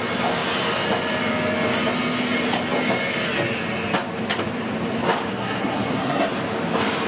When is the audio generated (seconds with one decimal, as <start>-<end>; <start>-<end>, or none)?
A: 5.3-6.3